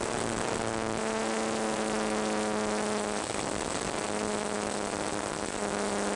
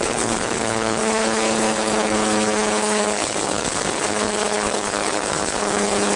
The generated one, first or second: second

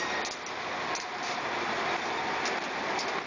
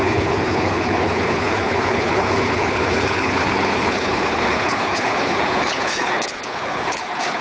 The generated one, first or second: second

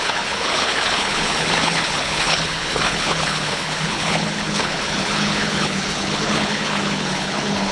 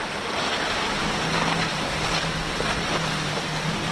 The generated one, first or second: first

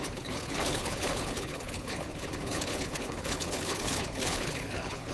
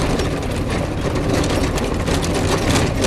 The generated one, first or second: first